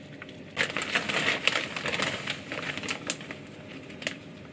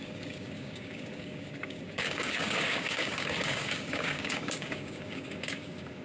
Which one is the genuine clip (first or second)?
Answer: first